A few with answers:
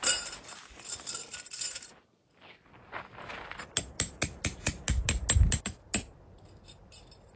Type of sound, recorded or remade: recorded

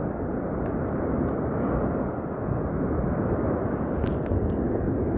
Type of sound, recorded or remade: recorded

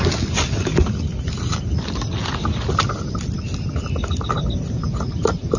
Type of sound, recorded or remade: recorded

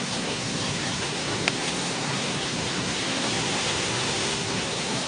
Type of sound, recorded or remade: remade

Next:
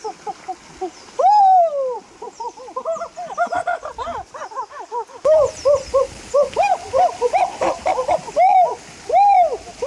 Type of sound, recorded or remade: recorded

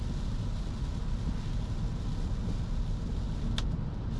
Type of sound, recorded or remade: recorded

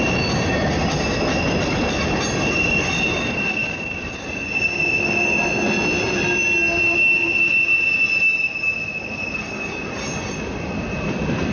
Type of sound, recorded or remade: recorded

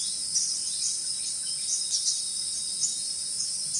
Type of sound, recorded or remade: recorded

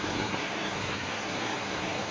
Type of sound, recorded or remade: remade